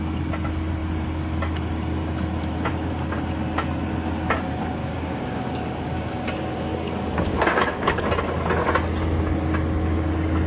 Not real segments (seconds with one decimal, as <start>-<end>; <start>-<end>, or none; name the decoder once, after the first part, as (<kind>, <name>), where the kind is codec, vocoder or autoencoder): 4.8-8.0 (codec, DAC)